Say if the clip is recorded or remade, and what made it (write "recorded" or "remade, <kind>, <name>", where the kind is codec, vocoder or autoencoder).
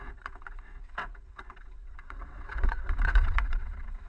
remade, vocoder, WaveNeXt